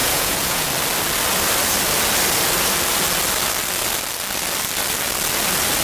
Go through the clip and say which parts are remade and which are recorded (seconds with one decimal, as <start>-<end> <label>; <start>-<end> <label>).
0.0-0.7 remade; 0.7-5.8 recorded